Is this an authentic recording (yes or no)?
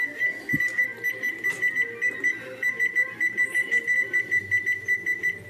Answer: yes